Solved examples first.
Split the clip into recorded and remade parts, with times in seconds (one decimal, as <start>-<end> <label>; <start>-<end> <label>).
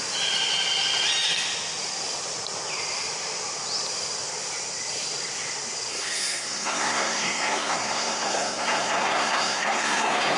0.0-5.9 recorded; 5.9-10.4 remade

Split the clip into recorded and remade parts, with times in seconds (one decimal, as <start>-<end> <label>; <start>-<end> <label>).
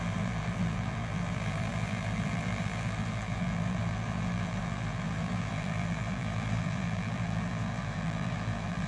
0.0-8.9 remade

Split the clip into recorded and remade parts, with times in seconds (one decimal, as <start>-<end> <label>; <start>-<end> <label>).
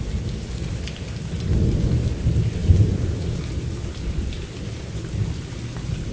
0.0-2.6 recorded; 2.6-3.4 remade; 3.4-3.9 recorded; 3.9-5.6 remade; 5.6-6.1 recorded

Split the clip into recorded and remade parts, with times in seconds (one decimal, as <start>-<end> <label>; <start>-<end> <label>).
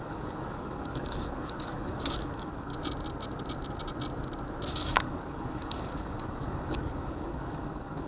0.0-2.7 remade; 2.7-4.7 recorded; 4.7-8.1 remade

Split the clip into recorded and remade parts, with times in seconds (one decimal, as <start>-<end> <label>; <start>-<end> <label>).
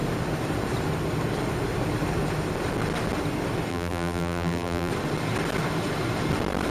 0.0-3.7 recorded; 3.7-4.9 remade; 4.9-6.7 recorded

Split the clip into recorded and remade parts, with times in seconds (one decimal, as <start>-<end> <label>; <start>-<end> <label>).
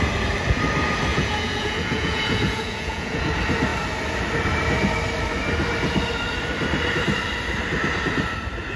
0.0-1.1 recorded; 1.1-3.2 remade; 3.2-8.8 recorded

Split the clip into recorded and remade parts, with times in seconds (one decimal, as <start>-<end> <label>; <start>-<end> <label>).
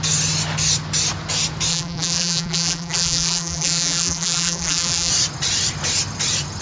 0.0-1.7 recorded; 1.7-5.1 remade; 5.1-6.6 recorded